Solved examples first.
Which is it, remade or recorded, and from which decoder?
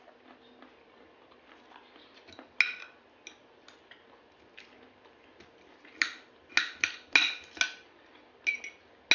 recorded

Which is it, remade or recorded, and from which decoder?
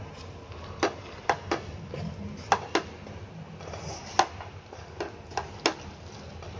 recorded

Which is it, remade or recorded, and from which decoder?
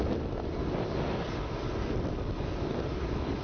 recorded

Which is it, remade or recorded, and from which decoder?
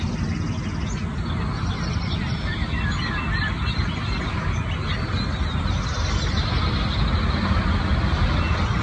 recorded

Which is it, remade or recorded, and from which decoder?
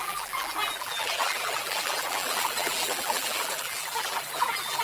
remade, vocoder, BigVGAN v2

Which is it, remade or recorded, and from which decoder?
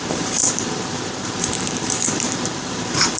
remade, vocoder, BigVGAN v2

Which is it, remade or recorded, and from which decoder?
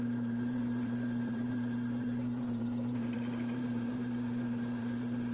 remade, vocoder, BigVGAN v2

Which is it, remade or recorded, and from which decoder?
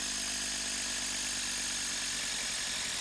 recorded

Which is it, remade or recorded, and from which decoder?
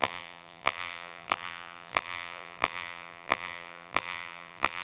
remade, vocoder, BigVGAN v2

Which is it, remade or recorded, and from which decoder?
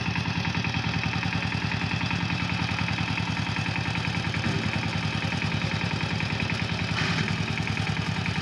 recorded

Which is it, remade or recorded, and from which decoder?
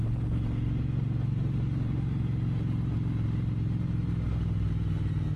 recorded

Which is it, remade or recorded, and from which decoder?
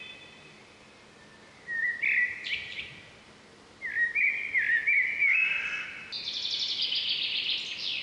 recorded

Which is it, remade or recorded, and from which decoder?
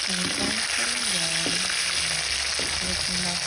recorded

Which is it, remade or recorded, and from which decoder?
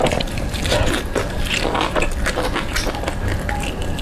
recorded